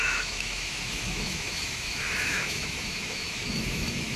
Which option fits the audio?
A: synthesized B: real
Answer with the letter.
A